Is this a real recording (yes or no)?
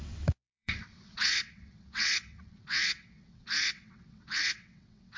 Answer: no